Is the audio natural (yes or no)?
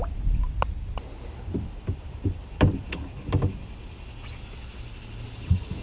yes